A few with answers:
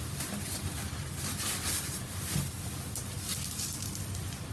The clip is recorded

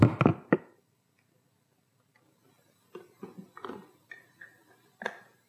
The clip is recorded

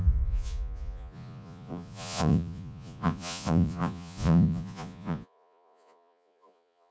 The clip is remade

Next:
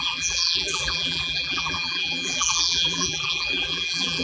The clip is remade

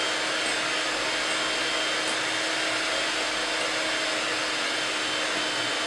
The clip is recorded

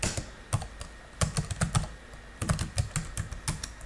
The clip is recorded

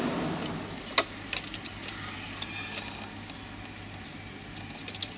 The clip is recorded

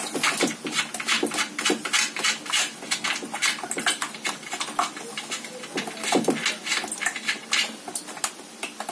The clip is recorded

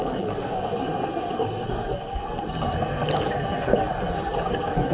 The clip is remade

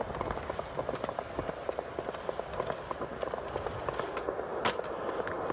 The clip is recorded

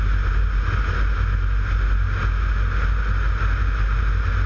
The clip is recorded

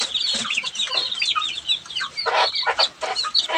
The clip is recorded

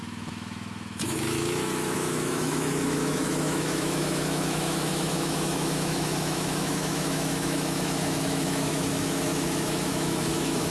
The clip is remade